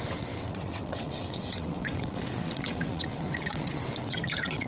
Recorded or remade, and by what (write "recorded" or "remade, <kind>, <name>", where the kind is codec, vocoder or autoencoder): remade, vocoder, WaveNeXt